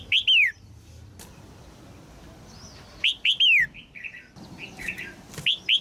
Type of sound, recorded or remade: recorded